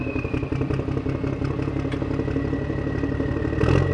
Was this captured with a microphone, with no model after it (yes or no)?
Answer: yes